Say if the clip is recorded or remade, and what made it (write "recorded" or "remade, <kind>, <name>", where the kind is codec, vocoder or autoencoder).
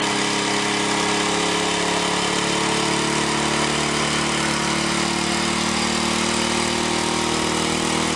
recorded